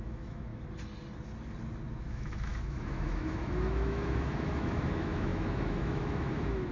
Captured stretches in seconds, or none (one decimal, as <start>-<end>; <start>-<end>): 0.5-1.9